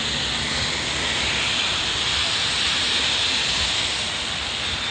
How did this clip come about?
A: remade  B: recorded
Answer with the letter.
B